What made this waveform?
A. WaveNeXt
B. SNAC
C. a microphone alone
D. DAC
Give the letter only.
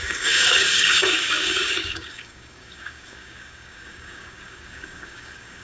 D